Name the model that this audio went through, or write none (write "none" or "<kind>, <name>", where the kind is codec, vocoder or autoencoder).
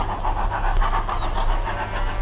none